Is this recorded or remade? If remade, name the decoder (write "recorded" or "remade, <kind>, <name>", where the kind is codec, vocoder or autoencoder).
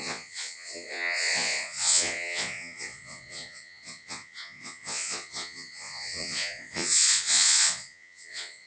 remade, vocoder, Vocos